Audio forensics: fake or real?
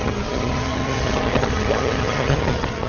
fake